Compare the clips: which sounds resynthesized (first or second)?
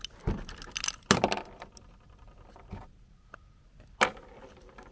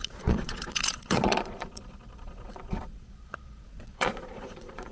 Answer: second